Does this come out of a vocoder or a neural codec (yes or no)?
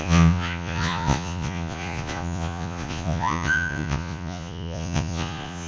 yes